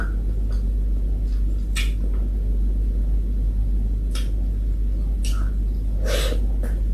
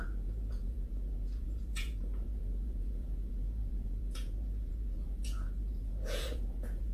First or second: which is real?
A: first